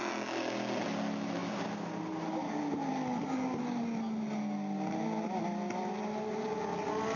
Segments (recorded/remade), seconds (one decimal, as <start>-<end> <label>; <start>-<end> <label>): 0.0-7.2 recorded